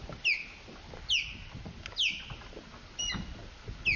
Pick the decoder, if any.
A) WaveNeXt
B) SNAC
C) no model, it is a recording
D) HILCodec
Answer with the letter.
C